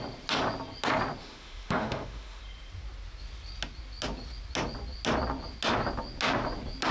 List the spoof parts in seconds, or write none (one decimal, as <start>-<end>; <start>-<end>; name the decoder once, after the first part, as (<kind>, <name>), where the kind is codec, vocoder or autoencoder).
1.2-2.4 (autoencoder, DAC-VAE)